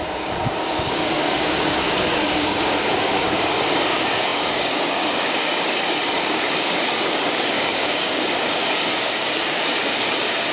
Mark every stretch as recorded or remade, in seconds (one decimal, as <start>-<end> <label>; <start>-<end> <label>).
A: 0.0-10.5 remade